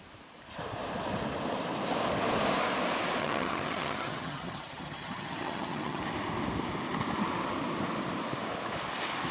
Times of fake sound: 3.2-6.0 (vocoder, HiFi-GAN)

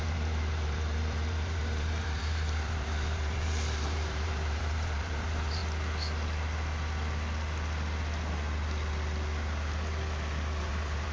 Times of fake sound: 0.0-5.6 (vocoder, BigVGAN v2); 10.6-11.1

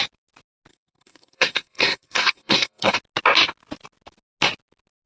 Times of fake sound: 0.7-2.9 (codec, SNAC)

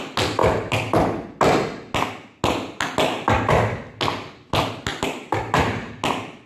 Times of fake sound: 4.9-5.7 (vocoder, BigVGAN v2)

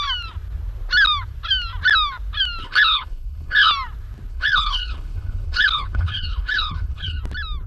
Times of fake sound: 2.6-3.7 (codec, HILCodec); 4.3-7.2

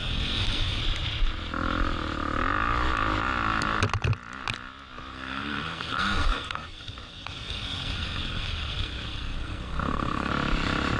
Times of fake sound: 0.0-0.8 (codec, SNAC); 5.1-10.3

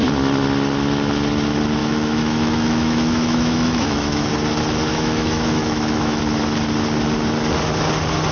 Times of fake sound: 1.8-4.3 (autoencoder, DAC-VAE); 4.9-6.2

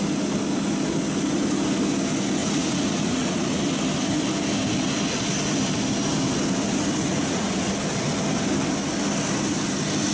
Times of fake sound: 2.4-3.6 (vocoder, Vocos); 7.0-7.5